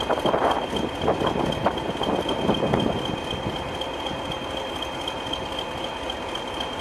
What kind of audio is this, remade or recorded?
recorded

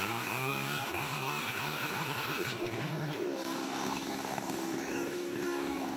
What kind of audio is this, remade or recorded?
remade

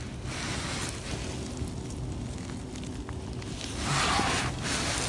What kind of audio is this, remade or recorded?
recorded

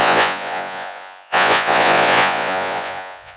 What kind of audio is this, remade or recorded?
remade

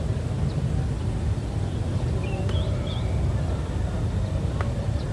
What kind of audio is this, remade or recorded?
recorded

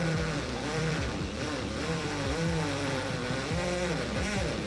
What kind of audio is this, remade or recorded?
remade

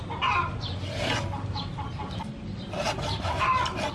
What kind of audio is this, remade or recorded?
recorded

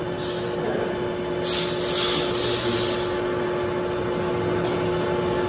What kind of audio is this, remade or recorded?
recorded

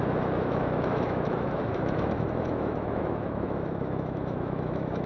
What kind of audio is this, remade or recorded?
remade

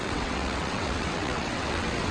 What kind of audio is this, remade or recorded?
remade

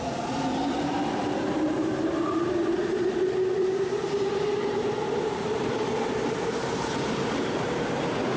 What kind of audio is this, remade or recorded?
remade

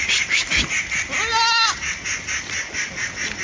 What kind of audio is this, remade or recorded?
recorded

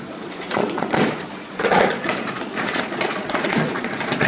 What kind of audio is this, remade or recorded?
remade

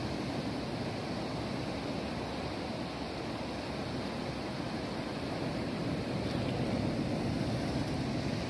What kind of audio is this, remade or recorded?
recorded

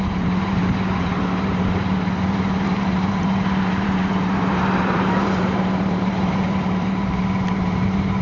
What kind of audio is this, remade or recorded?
remade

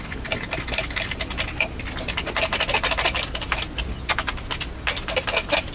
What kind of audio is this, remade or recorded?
recorded